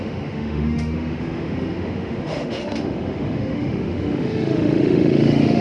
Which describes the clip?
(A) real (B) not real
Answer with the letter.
B